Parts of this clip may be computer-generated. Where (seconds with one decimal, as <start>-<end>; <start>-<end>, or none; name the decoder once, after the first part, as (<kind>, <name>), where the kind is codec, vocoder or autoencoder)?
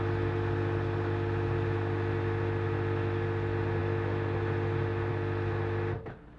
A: none